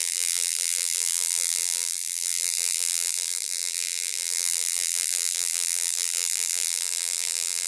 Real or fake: fake